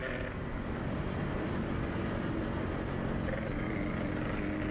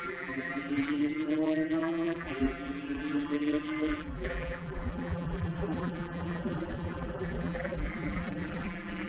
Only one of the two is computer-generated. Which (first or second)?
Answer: second